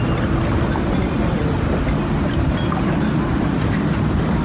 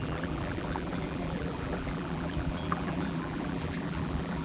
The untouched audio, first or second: first